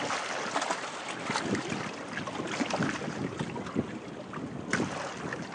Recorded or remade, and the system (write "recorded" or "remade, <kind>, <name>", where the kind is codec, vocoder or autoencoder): recorded